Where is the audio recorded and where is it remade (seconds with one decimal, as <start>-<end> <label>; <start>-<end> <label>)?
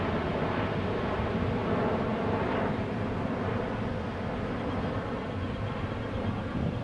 0.0-6.8 recorded